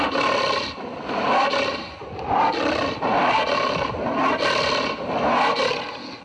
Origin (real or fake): real